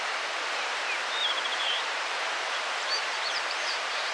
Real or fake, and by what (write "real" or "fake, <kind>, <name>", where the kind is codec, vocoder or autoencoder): fake, vocoder, BigVGAN v2